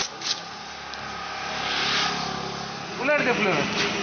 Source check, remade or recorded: recorded